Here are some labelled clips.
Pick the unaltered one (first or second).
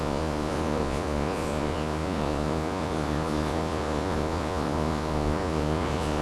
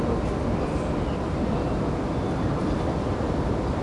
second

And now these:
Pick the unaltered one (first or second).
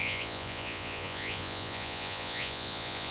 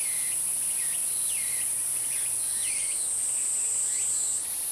second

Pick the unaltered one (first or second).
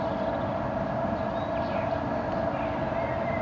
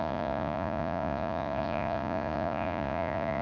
first